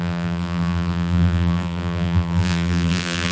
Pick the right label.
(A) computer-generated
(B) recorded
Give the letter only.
A